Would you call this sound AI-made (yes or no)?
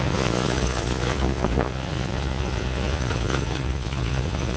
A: yes